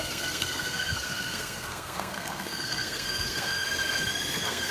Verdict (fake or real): fake